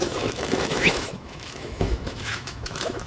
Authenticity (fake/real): fake